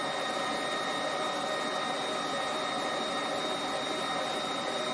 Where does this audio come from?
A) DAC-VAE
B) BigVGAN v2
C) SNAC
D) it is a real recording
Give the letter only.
D